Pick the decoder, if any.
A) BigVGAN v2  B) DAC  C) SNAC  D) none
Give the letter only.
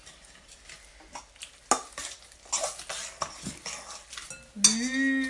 D